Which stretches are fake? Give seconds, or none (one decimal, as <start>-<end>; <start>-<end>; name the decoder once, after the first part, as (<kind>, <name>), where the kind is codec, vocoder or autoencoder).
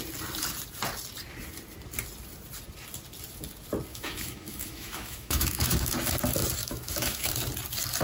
3.9-5.9 (autoencoder, DAC-VAE); 6.6-7.3